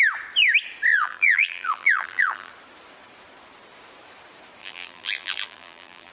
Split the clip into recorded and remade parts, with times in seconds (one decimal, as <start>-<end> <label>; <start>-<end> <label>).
0.0-0.9 recorded; 0.9-2.5 remade; 2.5-4.6 recorded; 4.6-6.1 remade